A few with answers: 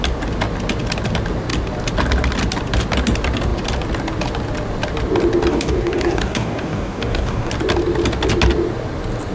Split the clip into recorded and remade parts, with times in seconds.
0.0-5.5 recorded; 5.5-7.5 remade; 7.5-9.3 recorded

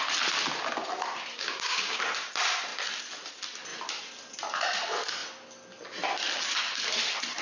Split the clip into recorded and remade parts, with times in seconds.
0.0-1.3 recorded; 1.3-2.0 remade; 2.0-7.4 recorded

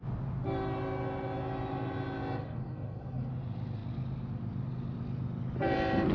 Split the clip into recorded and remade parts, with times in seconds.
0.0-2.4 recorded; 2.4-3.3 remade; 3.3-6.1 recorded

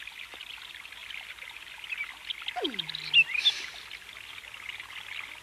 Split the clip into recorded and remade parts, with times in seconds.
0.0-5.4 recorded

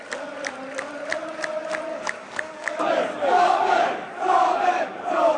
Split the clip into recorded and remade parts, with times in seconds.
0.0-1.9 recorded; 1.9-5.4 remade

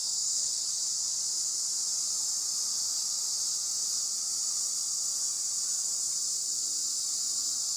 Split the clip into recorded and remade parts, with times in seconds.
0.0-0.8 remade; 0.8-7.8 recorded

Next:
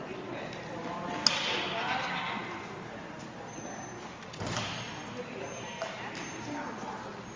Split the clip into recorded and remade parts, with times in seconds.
0.0-7.4 recorded

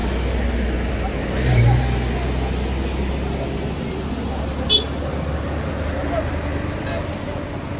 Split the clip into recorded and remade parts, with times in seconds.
0.0-7.8 recorded